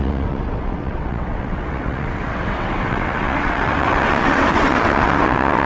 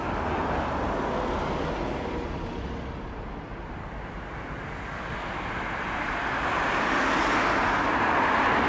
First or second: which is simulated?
first